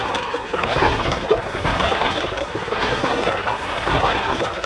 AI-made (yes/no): yes